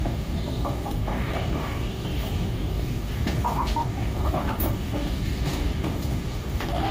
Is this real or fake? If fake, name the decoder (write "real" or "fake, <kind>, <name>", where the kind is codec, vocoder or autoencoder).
fake, codec, DAC